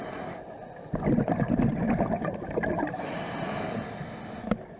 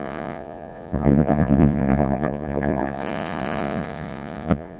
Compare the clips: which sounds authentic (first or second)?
first